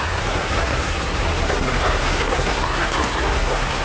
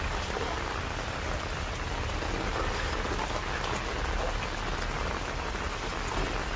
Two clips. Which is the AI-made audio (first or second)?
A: first